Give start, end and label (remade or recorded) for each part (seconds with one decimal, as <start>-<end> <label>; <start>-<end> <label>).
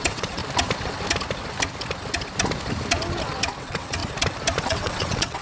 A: 0.0-0.4 remade; 0.4-3.6 recorded; 3.6-4.0 remade; 4.0-4.6 recorded; 4.6-5.4 remade